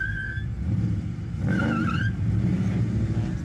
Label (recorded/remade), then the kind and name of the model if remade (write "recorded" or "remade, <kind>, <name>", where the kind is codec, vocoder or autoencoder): recorded